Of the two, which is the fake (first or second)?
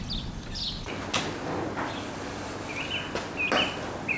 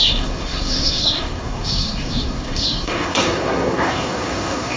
second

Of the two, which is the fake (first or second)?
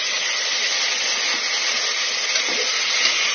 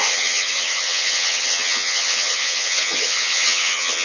second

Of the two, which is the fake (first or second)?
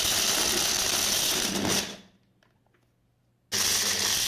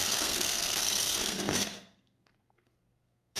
second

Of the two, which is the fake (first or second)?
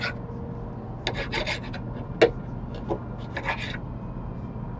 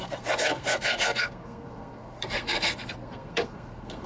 second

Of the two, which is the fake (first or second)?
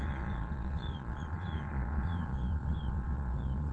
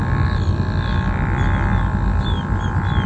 first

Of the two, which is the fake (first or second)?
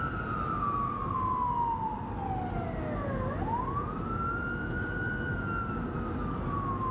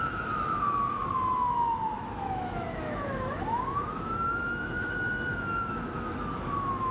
second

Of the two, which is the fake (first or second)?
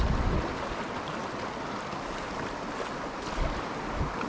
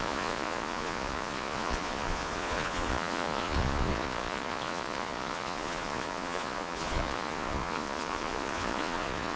second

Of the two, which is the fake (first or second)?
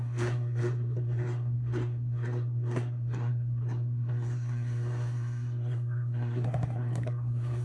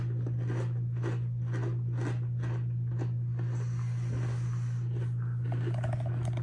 first